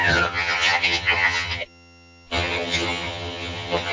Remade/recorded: remade